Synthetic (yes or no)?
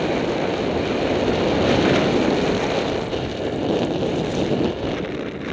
no